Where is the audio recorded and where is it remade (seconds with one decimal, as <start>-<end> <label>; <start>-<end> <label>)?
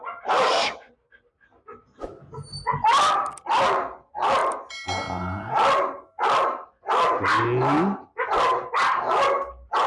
0.0-9.9 recorded